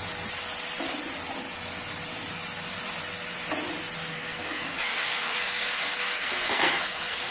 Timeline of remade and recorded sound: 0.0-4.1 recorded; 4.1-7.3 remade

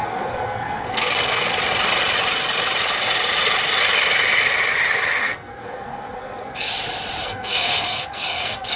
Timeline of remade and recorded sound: 0.0-1.5 remade; 1.5-5.2 recorded; 5.2-6.7 remade; 6.7-7.2 recorded; 7.2-8.8 remade

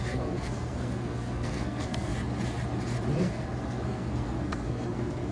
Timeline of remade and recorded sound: 0.0-2.1 remade; 2.1-3.2 recorded; 3.2-5.3 remade